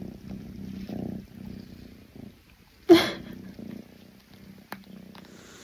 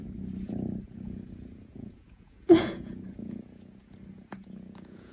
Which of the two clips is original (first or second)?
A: first